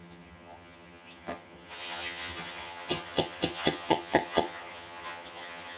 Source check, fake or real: fake